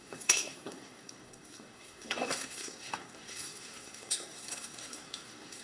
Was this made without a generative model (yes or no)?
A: no